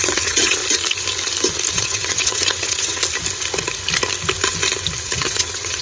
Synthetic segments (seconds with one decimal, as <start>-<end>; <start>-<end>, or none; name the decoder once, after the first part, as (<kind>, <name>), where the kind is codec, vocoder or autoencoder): 0.0-0.6 (vocoder, WaveNeXt); 1.7-3.0; 5.0-5.8